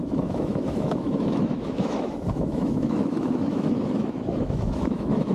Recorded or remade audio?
remade